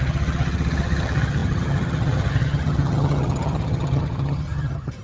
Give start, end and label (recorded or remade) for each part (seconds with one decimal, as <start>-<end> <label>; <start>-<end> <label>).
0.0-5.0 remade